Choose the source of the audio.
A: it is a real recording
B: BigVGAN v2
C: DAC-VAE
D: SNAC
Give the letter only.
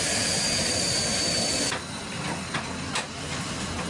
A